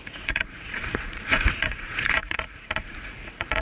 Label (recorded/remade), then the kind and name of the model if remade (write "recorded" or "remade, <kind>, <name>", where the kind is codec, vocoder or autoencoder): remade, vocoder, Vocos